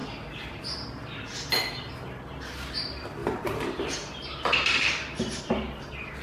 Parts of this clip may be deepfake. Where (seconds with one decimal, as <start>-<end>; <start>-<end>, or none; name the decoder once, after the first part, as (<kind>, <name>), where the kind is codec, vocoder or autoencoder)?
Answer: 3.2-5.4 (vocoder, BigVGAN v2)